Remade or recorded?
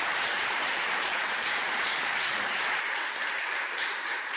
remade